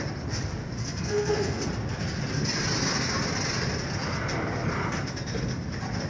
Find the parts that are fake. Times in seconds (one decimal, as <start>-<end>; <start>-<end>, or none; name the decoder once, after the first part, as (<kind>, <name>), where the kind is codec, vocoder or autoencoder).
0.8-1.6 (codec, SNAC)